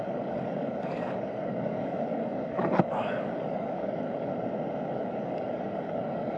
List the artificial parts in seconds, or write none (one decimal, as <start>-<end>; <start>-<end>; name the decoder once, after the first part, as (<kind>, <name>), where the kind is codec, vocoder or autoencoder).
0.0-4.3 (codec, DAC); 4.9-6.4